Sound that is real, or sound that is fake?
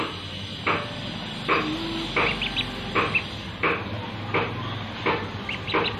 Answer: real